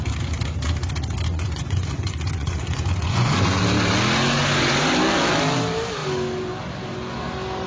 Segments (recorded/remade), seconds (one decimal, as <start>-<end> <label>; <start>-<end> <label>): 0.0-1.3 recorded; 1.3-3.6 remade; 3.6-7.7 recorded